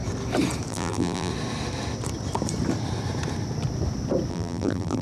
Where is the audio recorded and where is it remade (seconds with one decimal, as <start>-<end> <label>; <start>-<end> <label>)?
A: 0.0-0.7 recorded; 0.7-1.3 remade; 1.3-4.3 recorded; 4.3-5.0 remade